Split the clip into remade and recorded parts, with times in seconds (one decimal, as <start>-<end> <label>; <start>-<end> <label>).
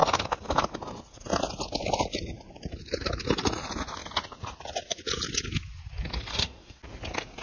0.0-6.3 recorded; 6.3-6.8 remade; 6.8-7.4 recorded